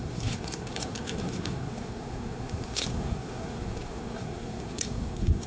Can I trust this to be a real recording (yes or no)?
no